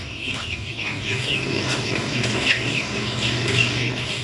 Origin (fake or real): fake